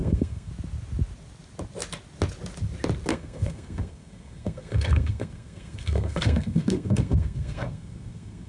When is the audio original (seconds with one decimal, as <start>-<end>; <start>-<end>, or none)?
0.5-3.1